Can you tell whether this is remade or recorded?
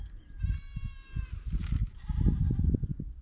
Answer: recorded